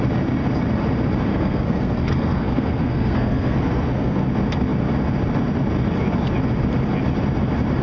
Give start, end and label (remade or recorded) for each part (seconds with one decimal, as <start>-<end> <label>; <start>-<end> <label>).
0.0-1.3 recorded; 1.3-4.3 remade; 4.3-7.8 recorded